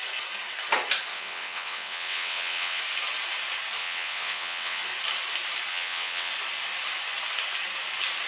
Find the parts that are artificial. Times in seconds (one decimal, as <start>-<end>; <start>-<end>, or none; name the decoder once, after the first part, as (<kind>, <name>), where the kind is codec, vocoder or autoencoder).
1.1-2.8 (vocoder, WaveNeXt); 3.8-4.8; 5.7-6.3